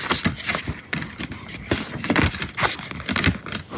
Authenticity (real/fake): real